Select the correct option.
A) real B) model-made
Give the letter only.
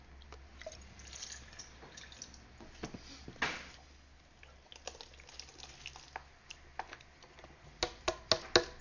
A